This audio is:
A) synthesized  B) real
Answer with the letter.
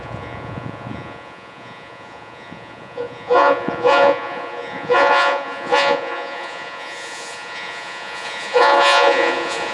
A